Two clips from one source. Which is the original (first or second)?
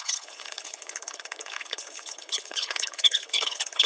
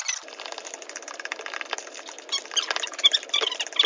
second